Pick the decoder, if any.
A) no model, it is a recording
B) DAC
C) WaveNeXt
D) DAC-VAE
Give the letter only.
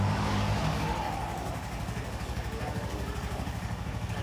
B